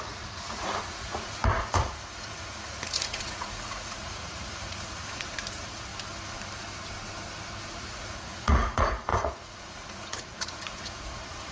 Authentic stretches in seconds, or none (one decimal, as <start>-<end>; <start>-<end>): 5.9-7.7

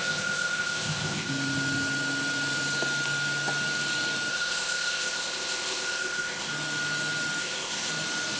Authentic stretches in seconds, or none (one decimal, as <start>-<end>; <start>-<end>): 1.3-4.3; 6.5-7.4; 7.9-8.4

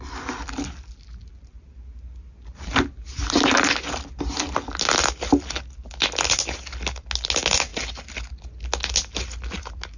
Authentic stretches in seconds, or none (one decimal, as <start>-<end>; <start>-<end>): 0.0-10.0

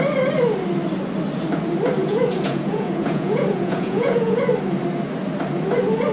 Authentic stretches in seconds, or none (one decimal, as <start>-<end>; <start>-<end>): 0.0-2.0; 4.4-6.1

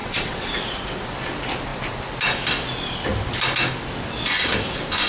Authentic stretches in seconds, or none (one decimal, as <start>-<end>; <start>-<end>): 0.5-5.1

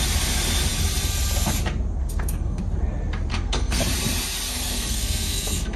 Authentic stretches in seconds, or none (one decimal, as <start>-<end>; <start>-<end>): 0.0-2.0; 2.6-3.3; 3.8-4.5